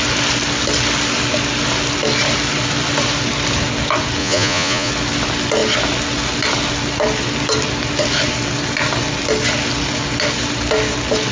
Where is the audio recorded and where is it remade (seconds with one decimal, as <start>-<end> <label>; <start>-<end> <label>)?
0.0-4.2 recorded; 4.2-4.9 remade; 4.9-11.3 recorded